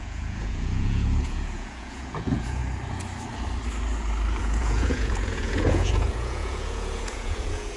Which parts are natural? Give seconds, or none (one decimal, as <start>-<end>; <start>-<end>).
2.6-4.4